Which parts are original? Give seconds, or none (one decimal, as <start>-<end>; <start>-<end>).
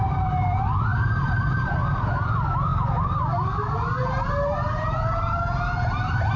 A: 0.0-0.9; 1.7-2.7